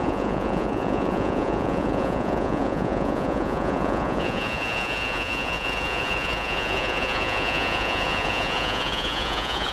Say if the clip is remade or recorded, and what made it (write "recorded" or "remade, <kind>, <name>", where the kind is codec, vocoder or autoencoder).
remade, vocoder, Vocos